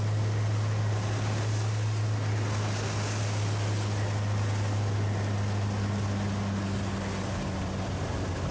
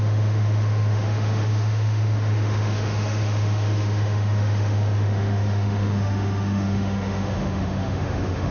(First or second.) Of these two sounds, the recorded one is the first